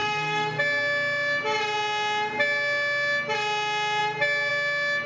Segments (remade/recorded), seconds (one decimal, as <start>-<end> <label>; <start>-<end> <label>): 0.0-0.6 remade; 0.6-5.1 recorded